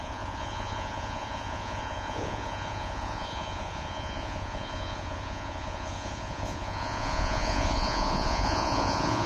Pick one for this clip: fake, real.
fake